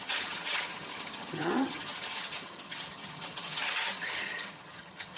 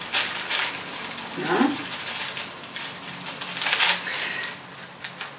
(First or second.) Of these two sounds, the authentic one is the second